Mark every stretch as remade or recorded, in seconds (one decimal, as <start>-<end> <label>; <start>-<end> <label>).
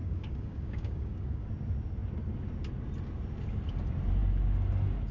0.0-1.5 remade; 1.5-5.1 recorded